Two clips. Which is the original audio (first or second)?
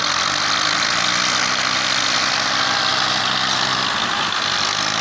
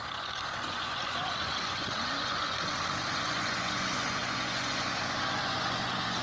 first